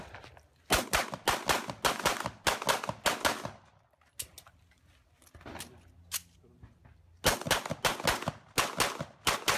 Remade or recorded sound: recorded